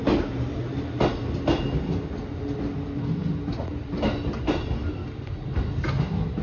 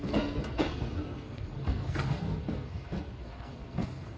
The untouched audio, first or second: first